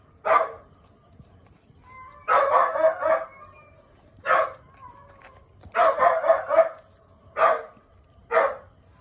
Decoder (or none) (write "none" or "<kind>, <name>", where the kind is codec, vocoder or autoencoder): none